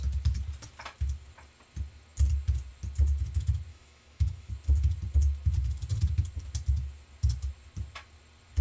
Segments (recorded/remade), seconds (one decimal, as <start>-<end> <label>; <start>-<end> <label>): 0.0-3.7 recorded; 3.7-4.5 remade; 4.5-8.6 recorded